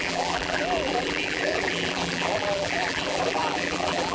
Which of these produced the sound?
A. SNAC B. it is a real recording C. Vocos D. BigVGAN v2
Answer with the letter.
D